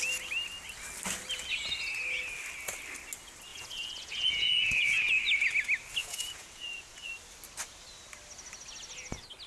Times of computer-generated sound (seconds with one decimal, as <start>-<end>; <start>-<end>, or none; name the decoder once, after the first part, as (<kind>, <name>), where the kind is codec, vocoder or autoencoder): 3.5-5.1 (vocoder, Vocos); 6.0-7.1